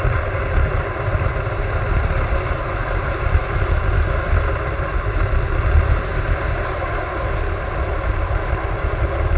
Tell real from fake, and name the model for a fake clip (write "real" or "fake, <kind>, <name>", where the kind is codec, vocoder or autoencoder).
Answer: real